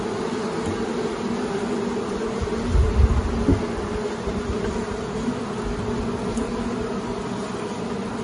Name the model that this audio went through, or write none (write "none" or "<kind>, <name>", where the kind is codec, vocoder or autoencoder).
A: none